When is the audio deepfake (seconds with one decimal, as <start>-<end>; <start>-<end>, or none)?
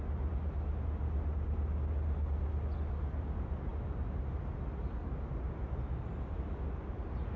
none